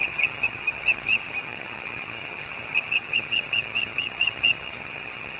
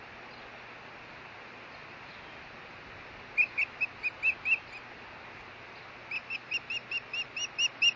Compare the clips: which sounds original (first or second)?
second